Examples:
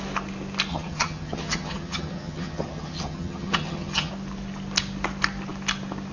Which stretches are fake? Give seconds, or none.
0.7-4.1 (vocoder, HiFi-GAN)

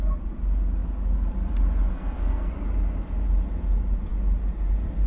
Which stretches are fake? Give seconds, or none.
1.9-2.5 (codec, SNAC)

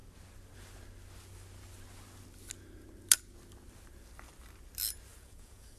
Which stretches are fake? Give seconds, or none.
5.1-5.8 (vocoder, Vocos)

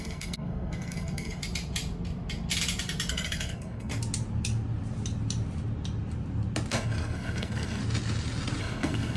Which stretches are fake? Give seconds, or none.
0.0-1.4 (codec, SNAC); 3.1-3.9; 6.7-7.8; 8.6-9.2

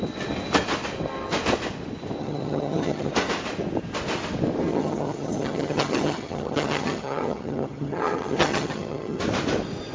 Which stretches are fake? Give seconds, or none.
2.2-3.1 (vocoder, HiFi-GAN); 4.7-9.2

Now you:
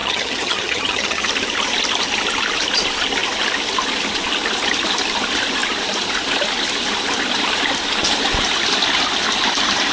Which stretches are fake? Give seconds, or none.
0.0-1.3 (vocoder, HiFi-GAN)

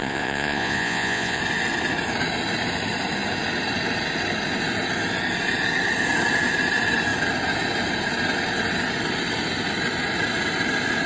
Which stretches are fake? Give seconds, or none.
0.0-1.4 (vocoder, Vocos)

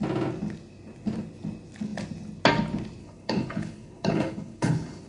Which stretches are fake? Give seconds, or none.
3.0-5.1 (codec, HILCodec)